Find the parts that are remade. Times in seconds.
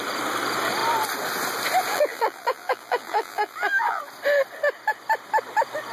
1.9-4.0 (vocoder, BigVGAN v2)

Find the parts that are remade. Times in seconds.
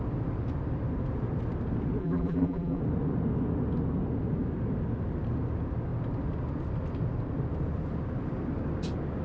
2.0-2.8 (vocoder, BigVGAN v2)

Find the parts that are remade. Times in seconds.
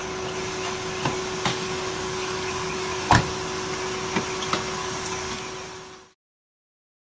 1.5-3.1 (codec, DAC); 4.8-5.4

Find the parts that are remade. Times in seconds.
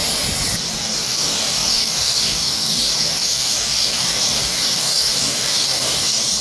0.7-6.4 (codec, DAC)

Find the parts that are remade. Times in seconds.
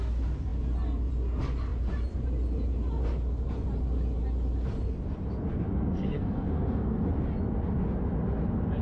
5.9-7.1 (codec, SNAC)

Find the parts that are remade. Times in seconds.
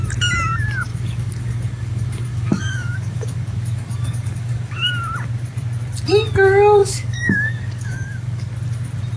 0.9-4.9 (codec, DAC); 6.8-8.5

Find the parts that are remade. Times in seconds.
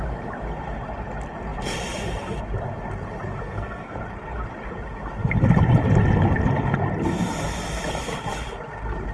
3.4-4.0 (codec, SNAC)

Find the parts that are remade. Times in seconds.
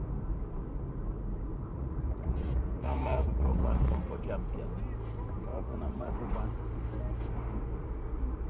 1.7-4.2 (vocoder, Vocos); 5.5-6.1